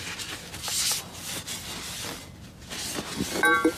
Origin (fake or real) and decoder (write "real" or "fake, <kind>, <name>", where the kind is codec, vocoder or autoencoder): real